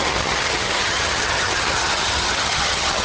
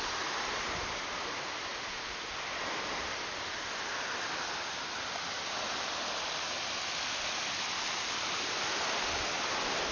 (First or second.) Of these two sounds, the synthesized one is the first